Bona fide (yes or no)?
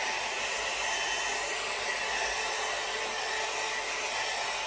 yes